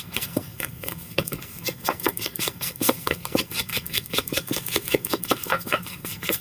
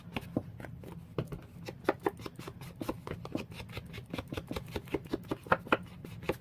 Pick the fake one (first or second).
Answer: first